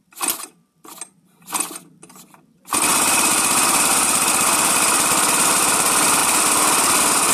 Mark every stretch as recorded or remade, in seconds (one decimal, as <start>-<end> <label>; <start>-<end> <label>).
0.0-7.3 remade